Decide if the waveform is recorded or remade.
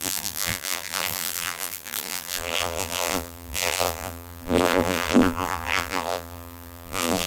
remade